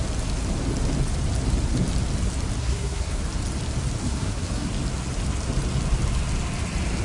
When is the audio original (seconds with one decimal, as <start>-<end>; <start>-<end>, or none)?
0.0-2.6; 3.2-4.0; 4.7-7.0